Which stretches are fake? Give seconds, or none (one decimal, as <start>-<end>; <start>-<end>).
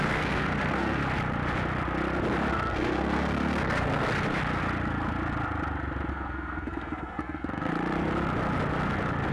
0.0-1.0; 2.5-4.0; 6.1-7.7